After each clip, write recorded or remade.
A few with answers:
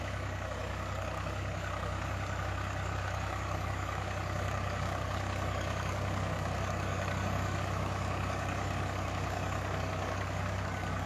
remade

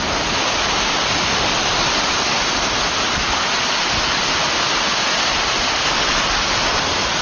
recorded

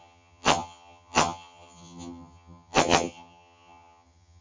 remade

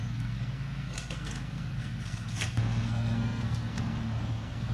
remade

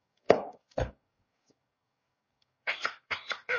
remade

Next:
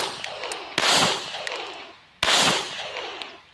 recorded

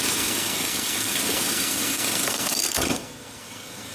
remade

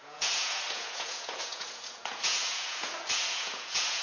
remade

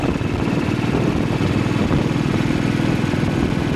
recorded